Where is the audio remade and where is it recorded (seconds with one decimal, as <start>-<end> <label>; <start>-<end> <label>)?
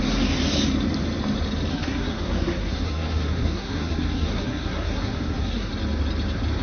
0.0-1.7 recorded; 1.7-5.7 remade; 5.7-6.6 recorded